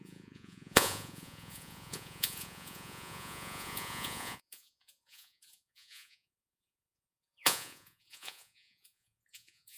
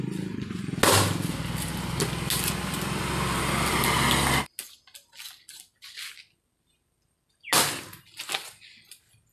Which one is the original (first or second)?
second